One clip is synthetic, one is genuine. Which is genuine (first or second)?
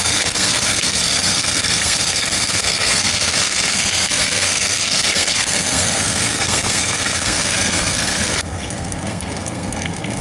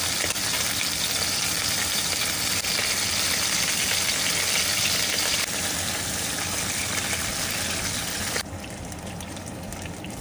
second